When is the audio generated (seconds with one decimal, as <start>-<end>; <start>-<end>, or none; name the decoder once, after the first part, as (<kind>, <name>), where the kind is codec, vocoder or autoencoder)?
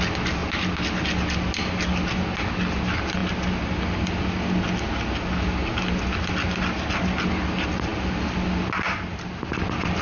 none